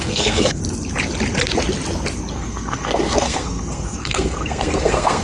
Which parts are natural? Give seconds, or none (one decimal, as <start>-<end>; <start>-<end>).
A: 0.6-2.3